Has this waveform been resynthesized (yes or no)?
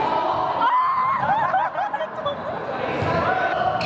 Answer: no